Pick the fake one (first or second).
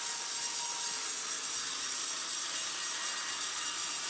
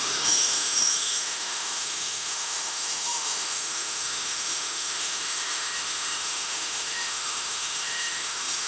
second